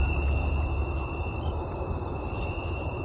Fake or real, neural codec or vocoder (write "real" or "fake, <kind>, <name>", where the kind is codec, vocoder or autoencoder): fake, vocoder, BigVGAN v2